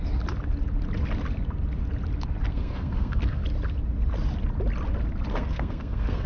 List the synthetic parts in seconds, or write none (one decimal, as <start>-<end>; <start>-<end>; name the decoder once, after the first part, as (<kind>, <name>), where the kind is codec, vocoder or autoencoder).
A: 2.5-3.4 (codec, SNAC); 5.3-6.3